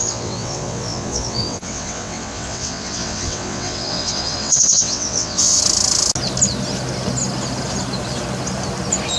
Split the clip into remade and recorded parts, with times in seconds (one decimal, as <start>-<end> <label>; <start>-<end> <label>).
0.0-5.6 remade; 5.6-9.2 recorded